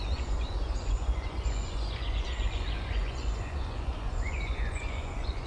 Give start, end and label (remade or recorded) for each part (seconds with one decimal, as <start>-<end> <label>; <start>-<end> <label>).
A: 0.0-5.5 remade